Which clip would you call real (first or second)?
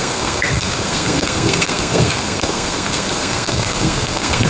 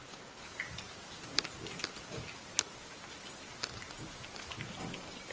second